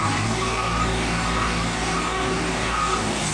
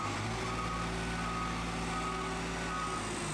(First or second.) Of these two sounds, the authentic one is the second